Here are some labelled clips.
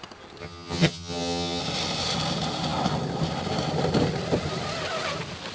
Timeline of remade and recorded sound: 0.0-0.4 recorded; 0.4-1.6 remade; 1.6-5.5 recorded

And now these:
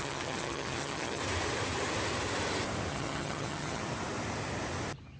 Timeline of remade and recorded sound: 0.0-1.2 remade; 1.2-2.9 recorded; 2.9-3.8 remade; 3.8-5.2 recorded

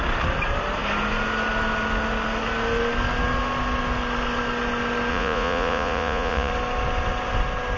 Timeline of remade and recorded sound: 0.0-5.1 recorded; 5.1-6.5 remade; 6.5-7.8 recorded

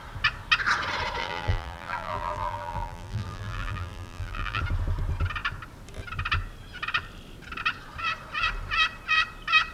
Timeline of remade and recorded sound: 0.0-1.2 recorded; 1.2-4.6 remade; 4.6-9.7 recorded

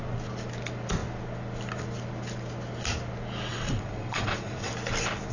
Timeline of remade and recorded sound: 0.0-3.5 recorded; 3.5-4.7 remade; 4.7-5.3 recorded